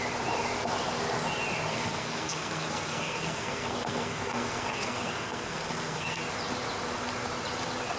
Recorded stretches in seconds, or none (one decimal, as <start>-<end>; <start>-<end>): 0.0-1.7; 6.2-8.0